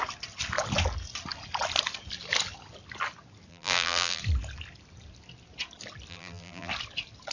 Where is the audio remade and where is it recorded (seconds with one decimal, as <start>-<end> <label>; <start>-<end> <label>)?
0.0-3.5 recorded; 3.5-4.2 remade; 4.2-6.1 recorded; 6.1-6.7 remade; 6.7-7.3 recorded